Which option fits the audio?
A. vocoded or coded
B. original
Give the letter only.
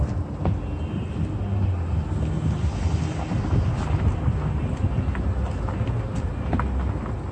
B